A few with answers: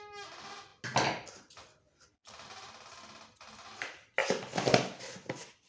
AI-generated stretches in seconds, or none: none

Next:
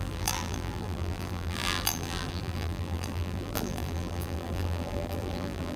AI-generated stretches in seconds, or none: 0.0-5.8